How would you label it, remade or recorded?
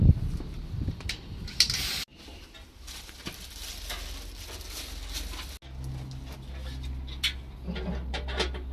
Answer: recorded